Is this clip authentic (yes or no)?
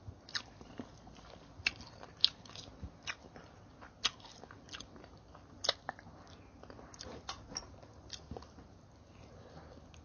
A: yes